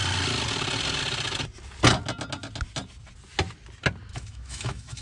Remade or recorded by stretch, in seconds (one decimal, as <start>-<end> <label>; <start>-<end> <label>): 0.0-4.1 recorded; 4.1-5.0 remade